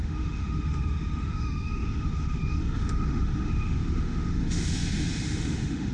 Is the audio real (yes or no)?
no